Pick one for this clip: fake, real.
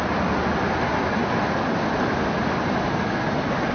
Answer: real